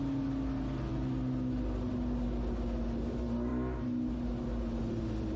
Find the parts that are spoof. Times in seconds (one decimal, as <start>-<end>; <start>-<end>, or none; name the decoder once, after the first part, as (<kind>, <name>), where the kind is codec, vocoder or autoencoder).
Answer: none